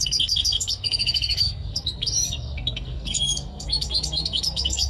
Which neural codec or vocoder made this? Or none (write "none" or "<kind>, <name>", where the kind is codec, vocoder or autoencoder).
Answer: codec, SNAC